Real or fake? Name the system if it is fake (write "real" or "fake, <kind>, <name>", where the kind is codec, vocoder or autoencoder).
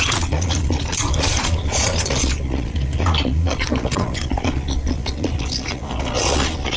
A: fake, vocoder, Vocos